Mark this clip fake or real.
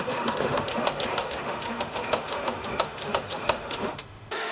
fake